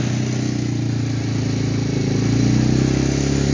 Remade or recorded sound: recorded